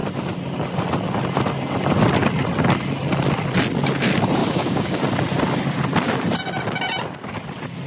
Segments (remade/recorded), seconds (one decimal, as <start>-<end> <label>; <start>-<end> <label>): 0.0-4.4 recorded; 4.4-5.0 remade; 5.0-7.9 recorded